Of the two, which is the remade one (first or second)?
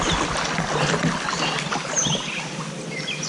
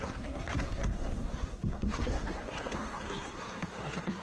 second